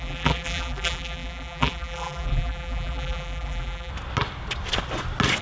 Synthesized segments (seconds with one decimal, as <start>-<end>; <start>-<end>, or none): 0.0-3.9